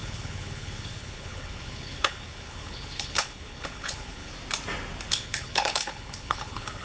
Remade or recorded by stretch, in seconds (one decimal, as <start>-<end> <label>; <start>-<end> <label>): 0.0-4.3 remade; 4.3-5.1 recorded; 5.1-6.8 remade